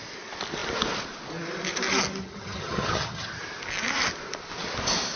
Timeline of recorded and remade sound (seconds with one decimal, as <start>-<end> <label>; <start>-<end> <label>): 0.0-2.2 recorded; 2.2-3.4 remade; 3.4-5.2 recorded